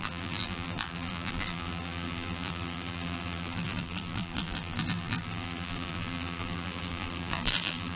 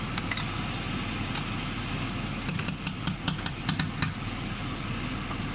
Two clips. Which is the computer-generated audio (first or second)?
first